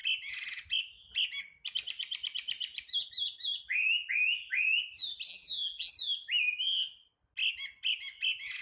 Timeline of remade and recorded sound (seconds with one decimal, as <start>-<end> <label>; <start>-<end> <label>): 0.0-5.3 recorded; 5.3-5.9 remade; 5.9-8.6 recorded